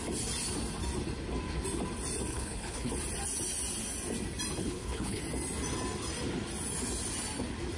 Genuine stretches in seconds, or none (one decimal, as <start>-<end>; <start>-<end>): 0.0-2.3; 2.9-4.6; 5.2-7.8